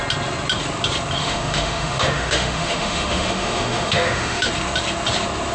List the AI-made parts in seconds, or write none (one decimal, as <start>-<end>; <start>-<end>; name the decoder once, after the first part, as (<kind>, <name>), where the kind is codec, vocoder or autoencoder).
1.2-4.5 (autoencoder, DAC-VAE)